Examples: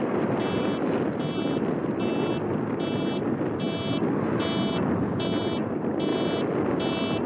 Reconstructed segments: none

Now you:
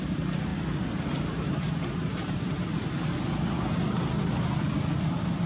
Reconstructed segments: none

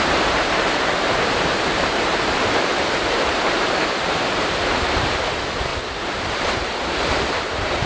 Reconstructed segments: 0.0-2.7 (vocoder, BigVGAN v2); 3.3-5.7; 6.3-7.9